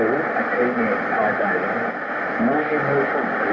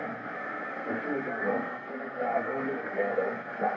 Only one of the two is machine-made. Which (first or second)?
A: second